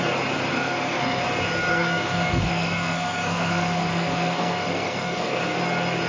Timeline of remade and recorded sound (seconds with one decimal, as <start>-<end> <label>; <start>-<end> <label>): 0.0-0.5 recorded; 0.5-1.2 remade; 1.2-1.7 recorded; 1.7-5.4 remade; 5.4-6.1 recorded